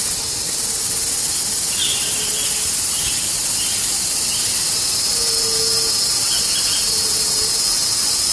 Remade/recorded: recorded